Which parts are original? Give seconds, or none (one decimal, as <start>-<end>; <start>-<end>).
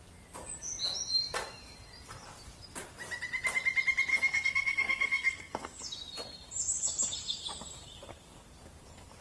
0.0-4.1; 5.8-9.2